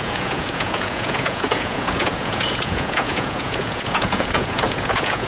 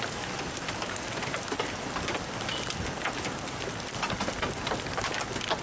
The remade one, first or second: first